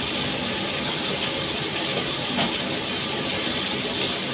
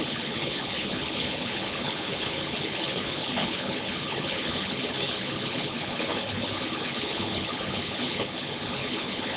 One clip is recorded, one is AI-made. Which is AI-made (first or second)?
second